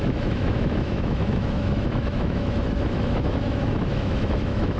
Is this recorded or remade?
remade